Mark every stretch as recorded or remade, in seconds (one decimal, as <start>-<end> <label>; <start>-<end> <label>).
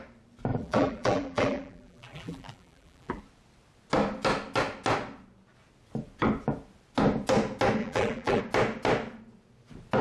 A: 0.0-0.5 recorded; 0.5-3.2 remade; 3.2-7.8 recorded; 7.8-8.4 remade; 8.4-10.0 recorded